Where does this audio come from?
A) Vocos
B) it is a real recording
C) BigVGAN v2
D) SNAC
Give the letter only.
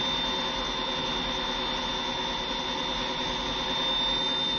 B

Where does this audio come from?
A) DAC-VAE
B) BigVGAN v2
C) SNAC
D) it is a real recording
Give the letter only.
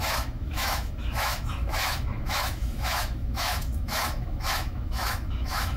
A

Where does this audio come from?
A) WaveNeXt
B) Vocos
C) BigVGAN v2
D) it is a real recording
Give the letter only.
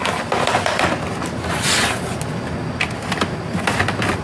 D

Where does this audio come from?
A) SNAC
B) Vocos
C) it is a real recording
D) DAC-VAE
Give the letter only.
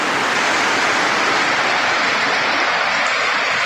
C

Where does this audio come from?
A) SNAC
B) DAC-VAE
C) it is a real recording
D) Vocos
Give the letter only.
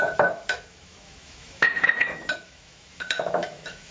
B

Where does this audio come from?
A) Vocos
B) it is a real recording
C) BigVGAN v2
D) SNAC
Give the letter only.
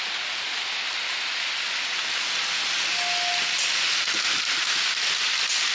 B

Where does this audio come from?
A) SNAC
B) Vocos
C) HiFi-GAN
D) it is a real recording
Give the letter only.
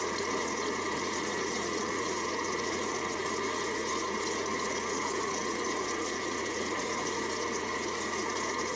B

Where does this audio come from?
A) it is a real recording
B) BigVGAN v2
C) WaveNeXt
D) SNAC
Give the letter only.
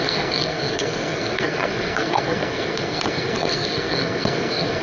D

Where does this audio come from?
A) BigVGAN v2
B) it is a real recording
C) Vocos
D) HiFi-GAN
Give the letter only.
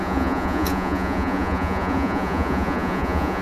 C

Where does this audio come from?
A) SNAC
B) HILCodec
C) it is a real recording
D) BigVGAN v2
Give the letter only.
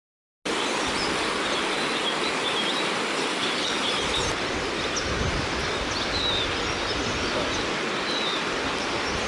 C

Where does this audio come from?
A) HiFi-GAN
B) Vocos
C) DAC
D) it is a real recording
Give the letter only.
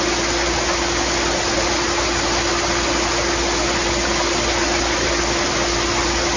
D